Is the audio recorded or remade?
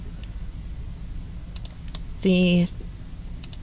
recorded